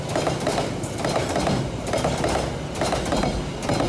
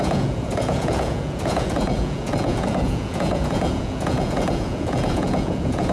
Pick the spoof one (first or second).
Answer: second